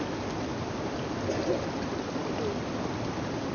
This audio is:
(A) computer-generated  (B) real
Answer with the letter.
B